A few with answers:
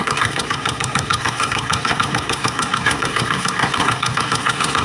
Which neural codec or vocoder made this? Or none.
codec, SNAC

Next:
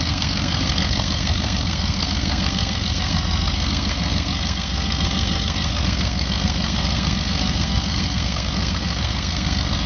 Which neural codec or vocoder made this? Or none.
codec, SNAC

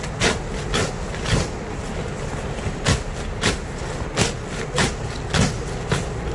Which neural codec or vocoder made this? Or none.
none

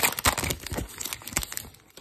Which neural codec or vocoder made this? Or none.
none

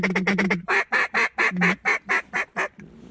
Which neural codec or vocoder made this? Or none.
none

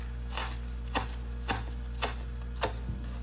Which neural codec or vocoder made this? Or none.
none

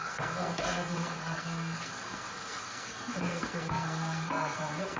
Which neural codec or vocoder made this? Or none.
codec, SNAC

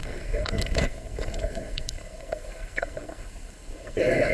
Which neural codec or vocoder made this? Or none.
codec, SNAC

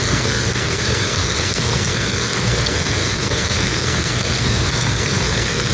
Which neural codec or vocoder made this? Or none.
codec, SNAC